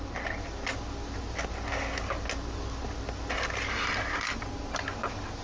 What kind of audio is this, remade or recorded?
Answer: recorded